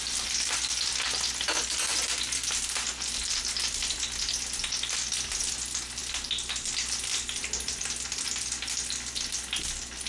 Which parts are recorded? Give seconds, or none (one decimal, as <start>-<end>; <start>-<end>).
0.0-10.1